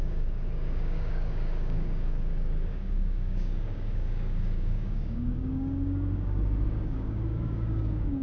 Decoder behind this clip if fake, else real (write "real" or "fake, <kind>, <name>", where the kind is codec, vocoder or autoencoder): fake, codec, DAC